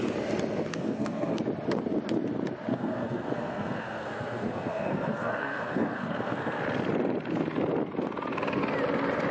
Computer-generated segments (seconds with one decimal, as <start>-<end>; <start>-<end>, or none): 0.7-1.4; 2.7-6.6